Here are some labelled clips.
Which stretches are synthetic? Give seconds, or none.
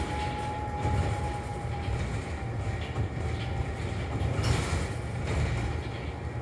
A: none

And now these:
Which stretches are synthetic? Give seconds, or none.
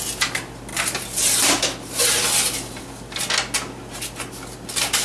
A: none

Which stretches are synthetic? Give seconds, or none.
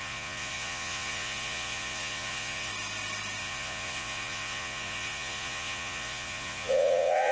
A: 0.0-2.7 (vocoder, Vocos); 3.4-7.3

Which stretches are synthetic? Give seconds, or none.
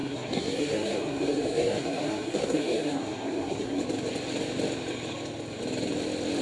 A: 0.0-3.8 (codec, SNAC)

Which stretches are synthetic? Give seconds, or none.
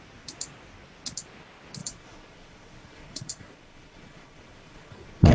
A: 1.8-5.3 (vocoder, Vocos)